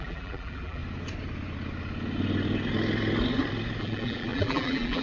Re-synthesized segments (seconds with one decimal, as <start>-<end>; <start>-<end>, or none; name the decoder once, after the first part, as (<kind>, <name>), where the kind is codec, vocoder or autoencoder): 0.0-0.8 (vocoder, BigVGAN v2); 3.8-5.0